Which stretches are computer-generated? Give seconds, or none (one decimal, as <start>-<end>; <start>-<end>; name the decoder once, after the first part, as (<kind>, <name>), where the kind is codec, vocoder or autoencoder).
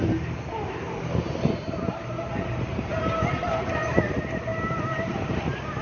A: 0.0-5.8 (vocoder, BigVGAN v2)